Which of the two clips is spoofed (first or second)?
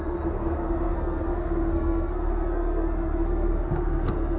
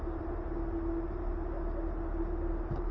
first